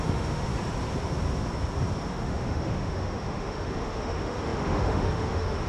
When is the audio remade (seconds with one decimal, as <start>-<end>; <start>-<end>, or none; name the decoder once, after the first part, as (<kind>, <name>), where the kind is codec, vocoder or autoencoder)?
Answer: 0.0-0.5 (autoencoder, DAC-VAE); 2.1-5.7